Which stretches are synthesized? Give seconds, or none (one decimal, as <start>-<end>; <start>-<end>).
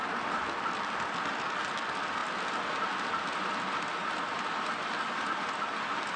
4.0-4.8